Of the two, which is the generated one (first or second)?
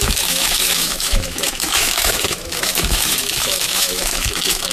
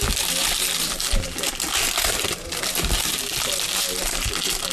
first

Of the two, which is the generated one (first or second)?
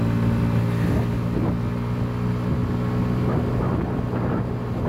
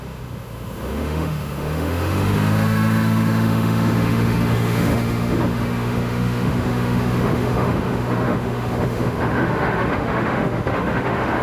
second